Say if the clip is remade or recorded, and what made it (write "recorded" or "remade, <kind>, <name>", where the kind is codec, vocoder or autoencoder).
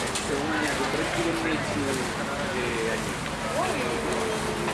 recorded